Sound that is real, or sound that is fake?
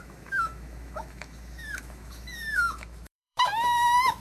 fake